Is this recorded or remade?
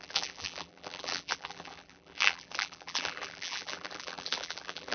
remade